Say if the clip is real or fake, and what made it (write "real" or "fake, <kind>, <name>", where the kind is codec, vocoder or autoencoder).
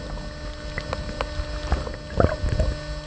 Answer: real